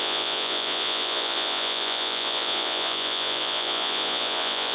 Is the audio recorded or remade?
remade